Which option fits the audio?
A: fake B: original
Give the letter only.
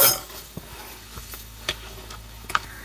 A